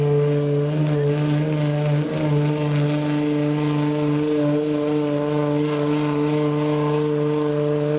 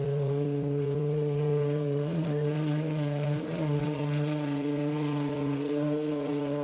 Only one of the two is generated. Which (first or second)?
second